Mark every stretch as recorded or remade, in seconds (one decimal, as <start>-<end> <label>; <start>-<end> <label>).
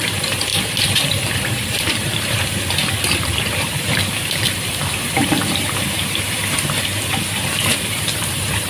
0.0-8.7 remade